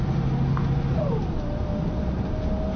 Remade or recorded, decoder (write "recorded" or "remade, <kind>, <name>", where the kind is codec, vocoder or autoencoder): recorded